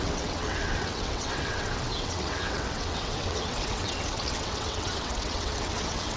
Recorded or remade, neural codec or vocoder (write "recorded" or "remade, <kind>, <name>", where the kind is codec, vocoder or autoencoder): remade, vocoder, WaveNeXt